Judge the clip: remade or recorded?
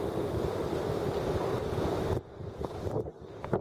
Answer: recorded